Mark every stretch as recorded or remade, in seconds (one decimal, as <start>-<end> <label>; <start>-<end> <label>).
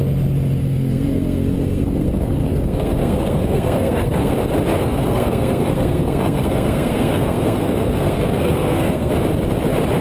0.0-0.6 recorded; 0.6-4.3 remade; 4.3-4.8 recorded; 4.8-9.1 remade; 9.1-10.0 recorded